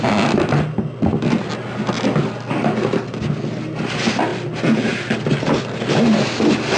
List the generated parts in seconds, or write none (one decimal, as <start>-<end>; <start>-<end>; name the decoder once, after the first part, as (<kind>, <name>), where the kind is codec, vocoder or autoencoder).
none